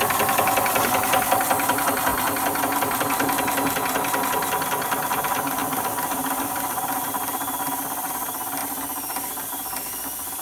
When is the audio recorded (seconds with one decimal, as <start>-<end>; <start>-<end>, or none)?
0.0-5.6; 8.1-10.4